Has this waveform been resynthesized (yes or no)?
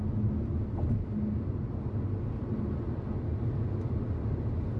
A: no